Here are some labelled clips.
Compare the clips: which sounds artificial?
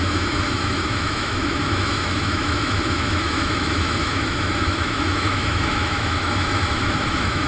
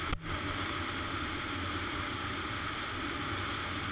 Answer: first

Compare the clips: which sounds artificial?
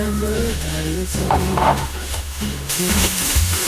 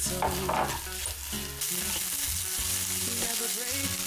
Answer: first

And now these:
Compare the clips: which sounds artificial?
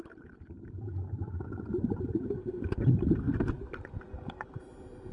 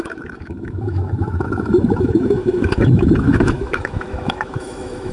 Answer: second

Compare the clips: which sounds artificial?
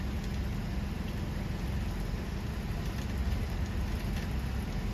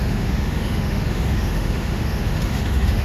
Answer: second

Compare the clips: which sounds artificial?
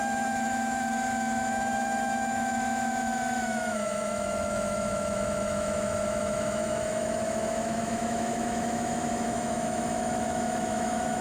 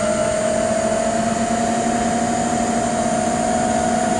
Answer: first